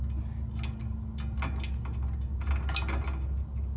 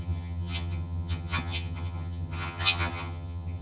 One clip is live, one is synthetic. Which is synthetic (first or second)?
second